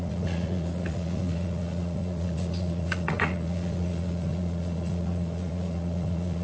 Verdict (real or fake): fake